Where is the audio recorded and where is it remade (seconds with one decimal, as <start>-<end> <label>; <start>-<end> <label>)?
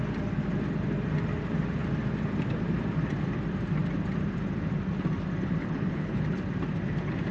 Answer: 0.0-5.6 recorded; 5.6-6.2 remade; 6.2-7.3 recorded